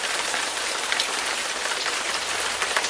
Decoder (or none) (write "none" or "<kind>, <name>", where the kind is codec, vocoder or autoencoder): vocoder, BigVGAN v2